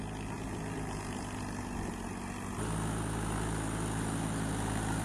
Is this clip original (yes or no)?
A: yes